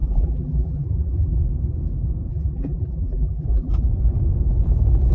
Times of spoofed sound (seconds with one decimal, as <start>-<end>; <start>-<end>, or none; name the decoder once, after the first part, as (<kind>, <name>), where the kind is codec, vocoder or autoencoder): 0.0-1.4 (vocoder, BigVGAN v2); 2.3-3.7